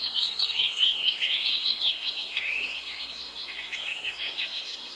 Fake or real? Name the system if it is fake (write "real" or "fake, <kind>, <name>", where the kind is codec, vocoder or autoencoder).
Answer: fake, codec, SNAC